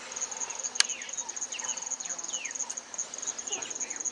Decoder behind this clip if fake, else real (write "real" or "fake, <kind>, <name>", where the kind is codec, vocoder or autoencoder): real